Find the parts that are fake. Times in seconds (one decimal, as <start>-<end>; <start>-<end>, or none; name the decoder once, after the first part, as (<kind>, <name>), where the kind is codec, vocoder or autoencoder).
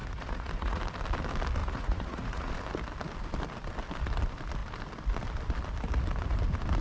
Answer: 0.0-0.8 (vocoder, Vocos); 1.6-2.5